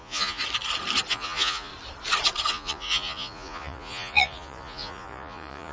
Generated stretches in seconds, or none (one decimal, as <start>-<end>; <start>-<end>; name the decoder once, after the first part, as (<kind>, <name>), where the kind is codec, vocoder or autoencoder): 0.0-0.4 (vocoder, Vocos); 1.1-1.7; 2.5-5.7